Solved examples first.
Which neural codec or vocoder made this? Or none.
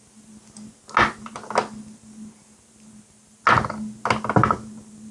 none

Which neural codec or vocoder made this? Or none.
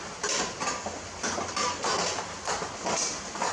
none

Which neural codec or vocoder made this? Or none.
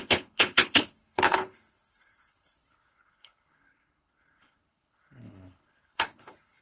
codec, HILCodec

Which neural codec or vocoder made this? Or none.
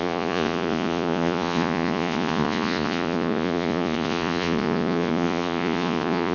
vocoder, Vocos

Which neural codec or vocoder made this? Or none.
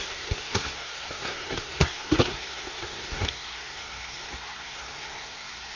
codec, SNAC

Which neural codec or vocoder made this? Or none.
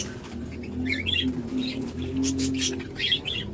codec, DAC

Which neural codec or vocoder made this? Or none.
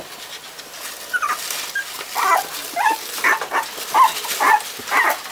none